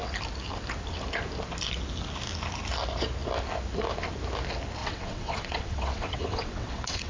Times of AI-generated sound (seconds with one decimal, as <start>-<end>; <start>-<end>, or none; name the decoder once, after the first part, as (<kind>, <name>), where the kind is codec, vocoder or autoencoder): 4.8-7.1 (vocoder, WaveNeXt)